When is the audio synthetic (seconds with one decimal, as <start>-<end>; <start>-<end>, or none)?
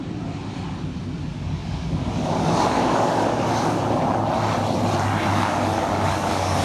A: 1.3-3.8; 5.3-6.6